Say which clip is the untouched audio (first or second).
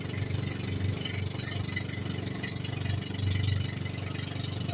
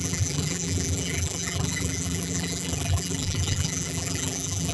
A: first